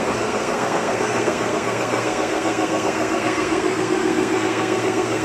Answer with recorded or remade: remade